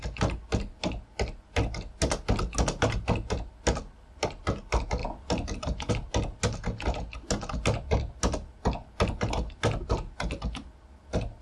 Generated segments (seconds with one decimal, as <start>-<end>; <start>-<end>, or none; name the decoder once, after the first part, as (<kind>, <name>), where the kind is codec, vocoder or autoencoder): none